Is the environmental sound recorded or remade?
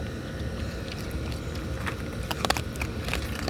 recorded